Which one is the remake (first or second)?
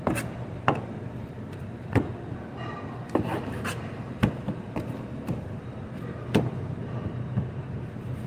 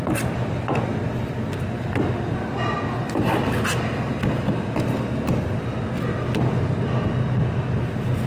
first